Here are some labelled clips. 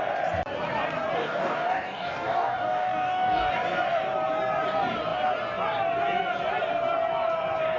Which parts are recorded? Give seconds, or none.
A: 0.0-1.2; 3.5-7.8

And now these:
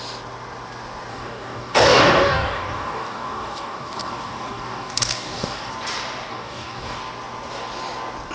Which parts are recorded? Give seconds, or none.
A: 0.0-1.1; 5.7-6.3; 7.0-8.3

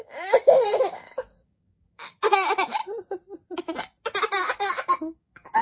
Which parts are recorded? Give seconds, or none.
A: 2.8-4.2